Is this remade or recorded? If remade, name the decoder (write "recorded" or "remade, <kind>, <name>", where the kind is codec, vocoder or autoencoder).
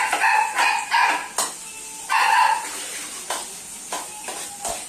recorded